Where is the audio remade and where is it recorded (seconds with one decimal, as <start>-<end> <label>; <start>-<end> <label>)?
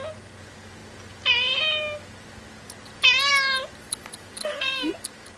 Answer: 0.0-4.4 recorded; 4.4-4.9 remade; 4.9-5.4 recorded